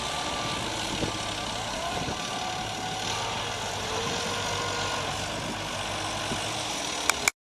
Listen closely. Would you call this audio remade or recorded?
recorded